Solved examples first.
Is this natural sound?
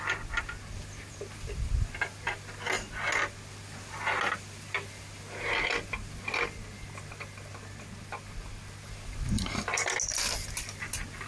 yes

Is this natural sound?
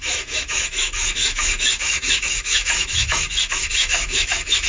no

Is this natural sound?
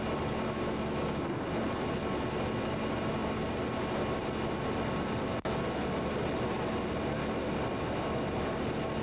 yes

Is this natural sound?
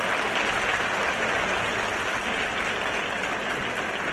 yes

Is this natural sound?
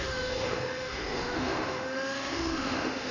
no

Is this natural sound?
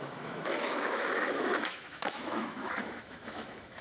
no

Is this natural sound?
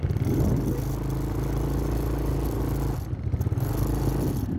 yes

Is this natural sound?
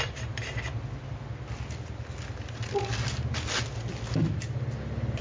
yes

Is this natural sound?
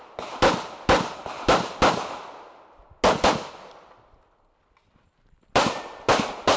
yes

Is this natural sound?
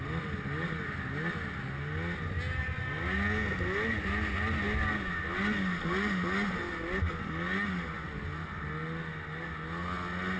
yes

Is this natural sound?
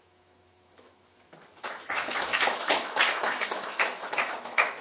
no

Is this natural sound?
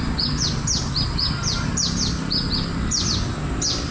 yes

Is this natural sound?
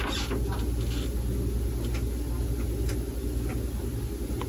yes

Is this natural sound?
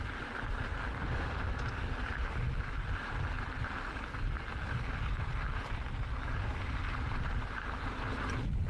yes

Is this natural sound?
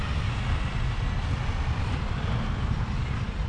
yes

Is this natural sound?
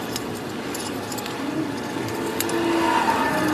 yes